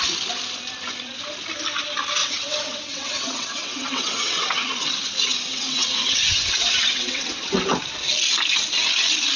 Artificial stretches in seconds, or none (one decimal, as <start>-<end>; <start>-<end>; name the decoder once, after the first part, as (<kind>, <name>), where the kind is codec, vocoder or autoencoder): 2.2-4.7 (vocoder, WaveNeXt); 5.5-7.6